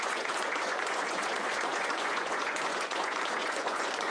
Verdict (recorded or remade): remade